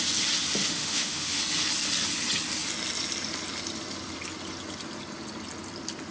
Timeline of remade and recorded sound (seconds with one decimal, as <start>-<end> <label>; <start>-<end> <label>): 0.0-0.6 recorded; 0.6-1.4 remade; 1.4-6.1 recorded